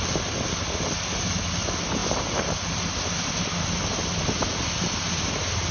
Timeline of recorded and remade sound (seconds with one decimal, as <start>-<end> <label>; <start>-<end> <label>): 0.0-5.7 recorded

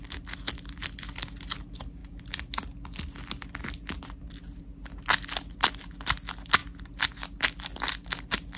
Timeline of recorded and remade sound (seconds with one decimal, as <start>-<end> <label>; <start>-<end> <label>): 0.0-8.6 recorded

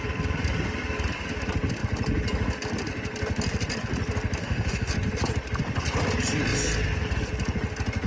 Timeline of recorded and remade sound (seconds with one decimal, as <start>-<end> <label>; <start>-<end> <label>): 0.0-4.4 recorded; 4.4-4.9 remade; 4.9-8.1 recorded

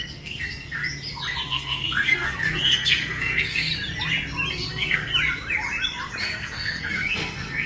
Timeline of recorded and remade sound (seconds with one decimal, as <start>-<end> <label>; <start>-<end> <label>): 0.0-0.8 remade; 0.8-1.5 recorded; 1.5-3.7 remade; 3.7-4.5 recorded; 4.5-5.1 remade; 5.1-6.2 recorded; 6.2-7.7 remade

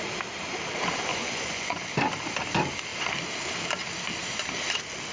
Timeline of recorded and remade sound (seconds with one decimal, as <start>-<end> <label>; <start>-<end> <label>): 0.0-1.1 recorded; 1.1-1.8 remade; 1.8-5.1 recorded

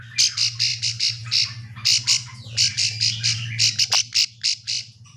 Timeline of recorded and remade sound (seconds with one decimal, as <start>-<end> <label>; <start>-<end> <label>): 0.0-5.2 recorded

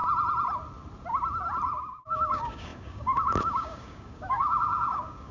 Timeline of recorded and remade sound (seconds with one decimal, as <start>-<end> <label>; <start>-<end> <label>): 0.0-1.8 recorded; 1.8-5.3 remade